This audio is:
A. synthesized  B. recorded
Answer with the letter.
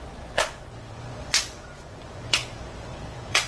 A